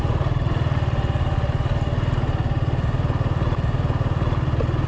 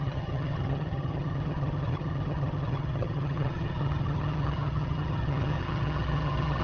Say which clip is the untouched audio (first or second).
first